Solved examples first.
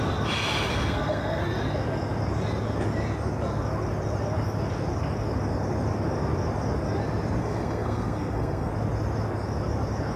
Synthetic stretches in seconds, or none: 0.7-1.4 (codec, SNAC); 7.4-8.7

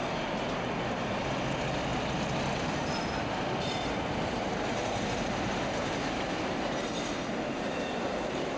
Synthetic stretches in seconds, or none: 1.9-4.3 (vocoder, BigVGAN v2)